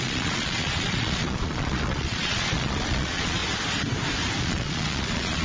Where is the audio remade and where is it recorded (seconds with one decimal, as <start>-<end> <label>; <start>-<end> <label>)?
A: 0.0-3.4 remade; 3.4-4.4 recorded; 4.4-5.4 remade